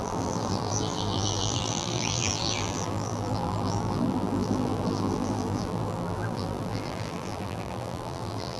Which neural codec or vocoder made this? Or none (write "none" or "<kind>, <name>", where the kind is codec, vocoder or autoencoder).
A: vocoder, BigVGAN v2